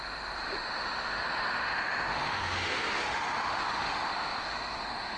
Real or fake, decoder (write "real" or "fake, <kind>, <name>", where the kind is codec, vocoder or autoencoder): fake, autoencoder, DAC-VAE